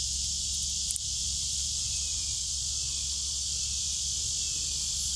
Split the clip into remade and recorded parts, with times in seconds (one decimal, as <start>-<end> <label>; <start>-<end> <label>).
0.0-1.2 recorded; 1.2-2.6 remade; 2.6-5.2 recorded